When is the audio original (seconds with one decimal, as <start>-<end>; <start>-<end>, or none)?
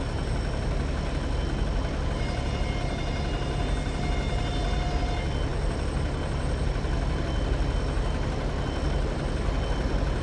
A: 0.0-10.2